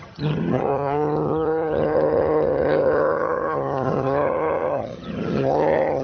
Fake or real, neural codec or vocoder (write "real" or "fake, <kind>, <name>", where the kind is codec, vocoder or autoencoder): fake, vocoder, HiFi-GAN